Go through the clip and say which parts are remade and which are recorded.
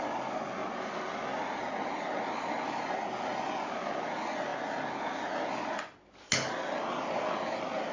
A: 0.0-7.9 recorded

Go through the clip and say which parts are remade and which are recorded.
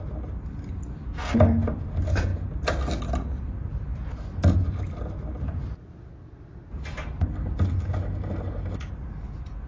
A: 0.0-9.7 recorded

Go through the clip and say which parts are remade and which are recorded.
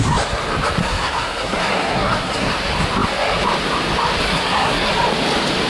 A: 0.0-0.8 recorded; 0.8-2.5 remade; 2.5-4.2 recorded; 4.2-4.9 remade; 4.9-5.7 recorded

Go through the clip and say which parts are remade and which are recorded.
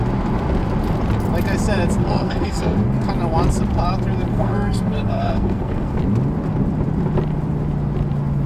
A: 0.0-2.0 recorded; 2.0-3.1 remade; 3.1-4.3 recorded; 4.3-6.0 remade; 6.0-8.5 recorded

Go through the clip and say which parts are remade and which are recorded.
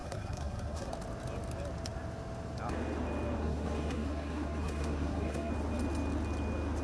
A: 0.0-0.9 remade; 0.9-3.4 recorded; 3.4-5.5 remade; 5.5-6.8 recorded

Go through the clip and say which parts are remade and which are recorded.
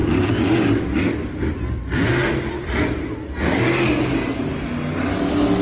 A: 0.0-5.6 recorded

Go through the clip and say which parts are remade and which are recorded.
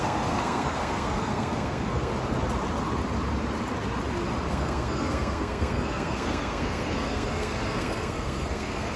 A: 0.0-2.1 remade; 2.1-4.5 recorded; 4.5-9.0 remade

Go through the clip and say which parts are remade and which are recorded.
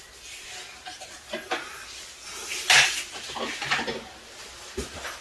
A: 0.0-5.2 recorded